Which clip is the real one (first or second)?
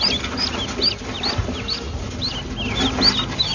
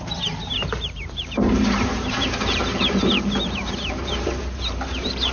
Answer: first